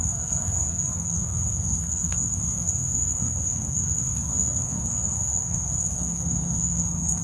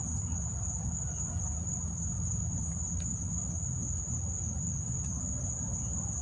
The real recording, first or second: second